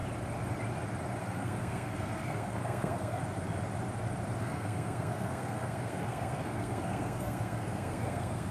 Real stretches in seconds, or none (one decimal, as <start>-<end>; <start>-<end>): 0.0-1.2; 3.2-4.4